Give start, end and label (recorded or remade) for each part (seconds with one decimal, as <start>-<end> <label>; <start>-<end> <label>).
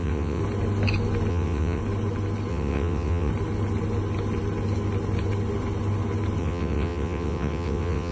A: 0.0-0.4 remade; 0.4-1.3 recorded; 1.3-1.8 remade; 1.8-2.5 recorded; 2.5-3.3 remade; 3.3-6.4 recorded; 6.4-8.1 remade